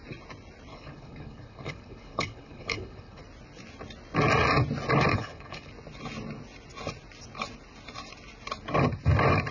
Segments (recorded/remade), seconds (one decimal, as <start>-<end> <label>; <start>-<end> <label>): 0.0-0.7 recorded; 0.7-3.2 remade; 3.2-5.1 recorded; 5.1-5.7 remade; 5.7-9.5 recorded